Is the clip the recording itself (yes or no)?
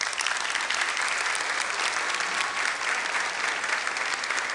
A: yes